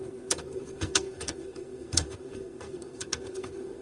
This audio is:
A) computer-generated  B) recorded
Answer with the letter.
A